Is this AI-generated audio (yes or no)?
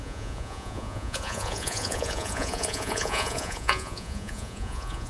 yes